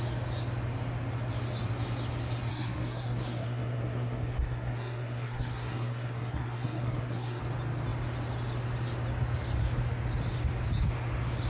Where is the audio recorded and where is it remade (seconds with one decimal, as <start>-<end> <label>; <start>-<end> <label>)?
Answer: 0.0-2.5 recorded; 2.5-7.4 remade; 7.4-11.5 recorded